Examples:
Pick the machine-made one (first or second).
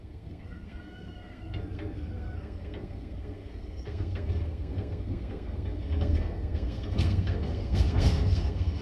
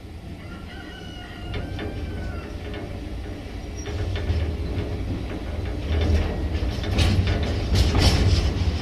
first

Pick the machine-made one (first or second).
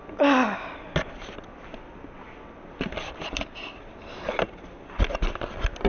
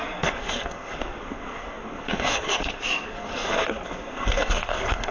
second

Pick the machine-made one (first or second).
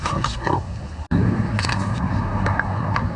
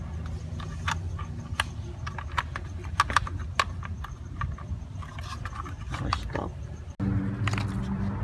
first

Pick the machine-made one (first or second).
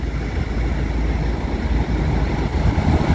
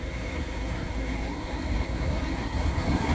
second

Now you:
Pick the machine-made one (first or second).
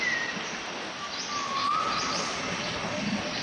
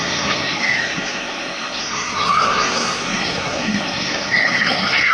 second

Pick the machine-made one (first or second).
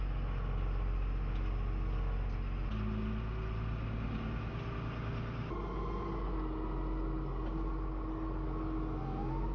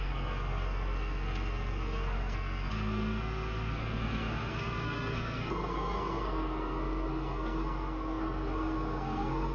second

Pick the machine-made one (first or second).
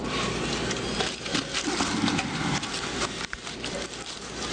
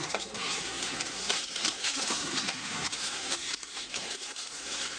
second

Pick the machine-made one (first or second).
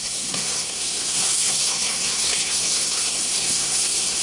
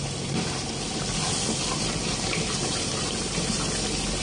first